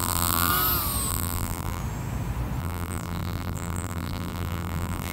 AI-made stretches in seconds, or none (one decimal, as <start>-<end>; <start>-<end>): 0.0-0.5; 1.1-1.8; 2.6-5.1